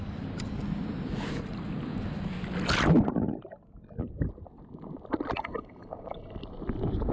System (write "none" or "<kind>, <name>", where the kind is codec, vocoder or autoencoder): none